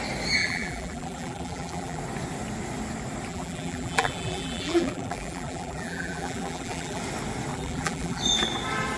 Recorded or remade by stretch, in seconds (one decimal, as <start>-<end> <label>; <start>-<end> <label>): 0.0-0.4 recorded; 0.4-2.0 remade; 2.0-3.3 recorded; 3.3-7.0 remade; 7.0-7.5 recorded; 7.5-8.2 remade; 8.2-9.0 recorded